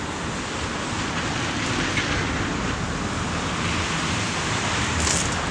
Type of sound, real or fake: real